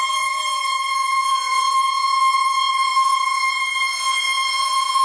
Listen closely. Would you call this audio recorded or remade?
remade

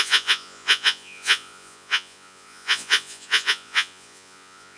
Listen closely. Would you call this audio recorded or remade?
remade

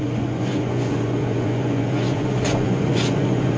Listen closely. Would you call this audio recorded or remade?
remade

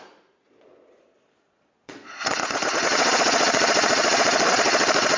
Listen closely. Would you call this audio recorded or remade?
remade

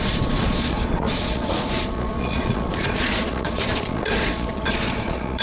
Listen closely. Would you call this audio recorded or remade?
remade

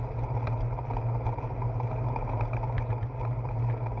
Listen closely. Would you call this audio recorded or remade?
recorded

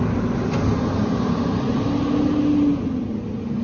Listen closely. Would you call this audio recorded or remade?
recorded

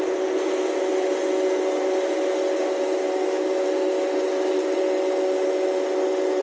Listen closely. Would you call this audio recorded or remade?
recorded